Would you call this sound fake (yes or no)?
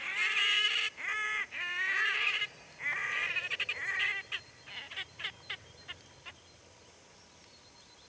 yes